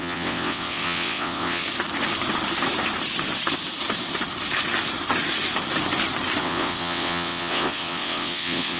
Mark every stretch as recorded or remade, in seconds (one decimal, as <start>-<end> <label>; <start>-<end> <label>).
0.0-1.6 remade; 1.6-6.4 recorded; 6.4-8.8 remade